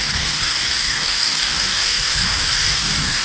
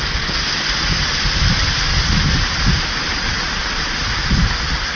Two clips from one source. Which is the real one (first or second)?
second